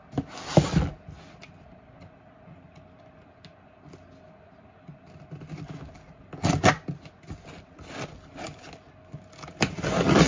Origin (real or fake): real